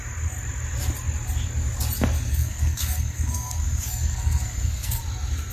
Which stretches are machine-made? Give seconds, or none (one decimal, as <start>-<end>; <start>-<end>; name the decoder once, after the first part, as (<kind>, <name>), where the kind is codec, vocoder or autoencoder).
2.3-5.0 (codec, SNAC)